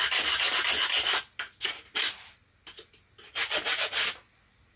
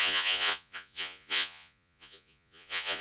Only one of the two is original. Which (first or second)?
first